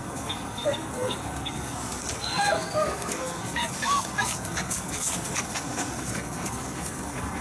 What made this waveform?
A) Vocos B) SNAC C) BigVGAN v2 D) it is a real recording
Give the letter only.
B